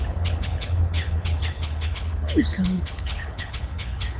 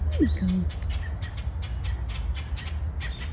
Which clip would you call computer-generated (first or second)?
first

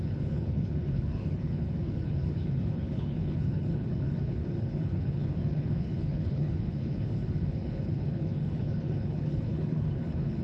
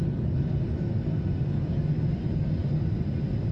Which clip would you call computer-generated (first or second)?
first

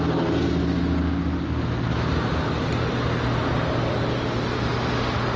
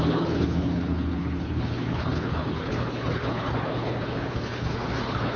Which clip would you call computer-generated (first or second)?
second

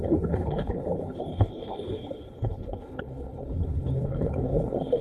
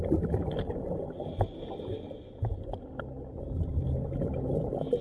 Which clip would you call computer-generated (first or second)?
first